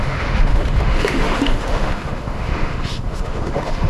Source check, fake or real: fake